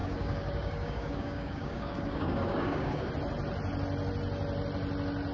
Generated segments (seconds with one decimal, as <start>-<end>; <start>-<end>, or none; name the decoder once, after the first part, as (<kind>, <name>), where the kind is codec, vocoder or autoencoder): 0.0-3.1 (codec, DAC)